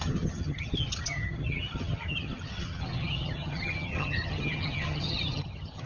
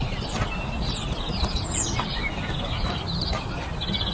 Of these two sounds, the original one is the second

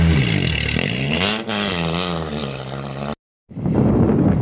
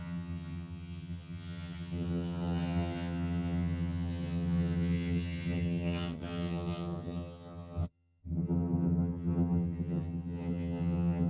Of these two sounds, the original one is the first